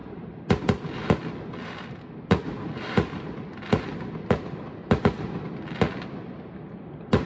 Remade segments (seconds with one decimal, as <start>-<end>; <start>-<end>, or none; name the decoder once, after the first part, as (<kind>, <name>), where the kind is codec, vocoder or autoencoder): none